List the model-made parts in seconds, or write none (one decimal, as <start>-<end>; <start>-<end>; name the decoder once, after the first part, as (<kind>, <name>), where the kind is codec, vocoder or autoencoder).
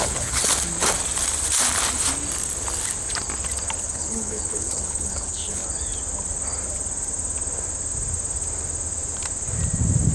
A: 0.0-0.4 (codec, HILCodec); 3.8-5.6